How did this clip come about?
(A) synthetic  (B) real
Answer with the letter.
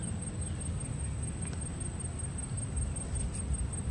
B